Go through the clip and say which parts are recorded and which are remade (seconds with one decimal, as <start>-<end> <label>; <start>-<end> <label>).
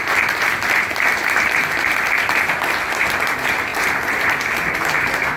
0.0-5.4 recorded